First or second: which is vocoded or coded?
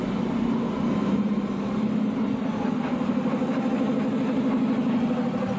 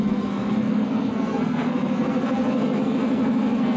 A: second